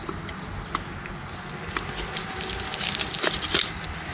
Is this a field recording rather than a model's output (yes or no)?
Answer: yes